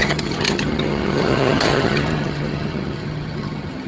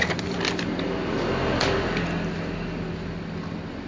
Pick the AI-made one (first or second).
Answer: first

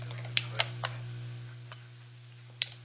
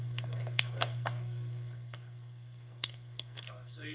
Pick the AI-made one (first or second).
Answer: second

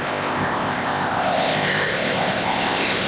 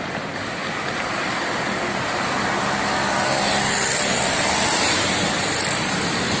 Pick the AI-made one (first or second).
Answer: first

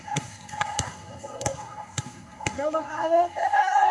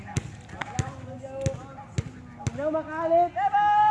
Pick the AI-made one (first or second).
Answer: first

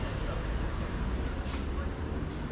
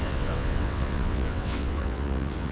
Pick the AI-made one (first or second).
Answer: second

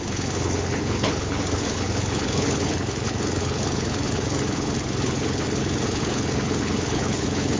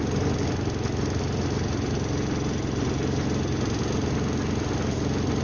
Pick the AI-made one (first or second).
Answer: first